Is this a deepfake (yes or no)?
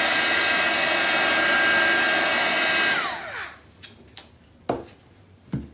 no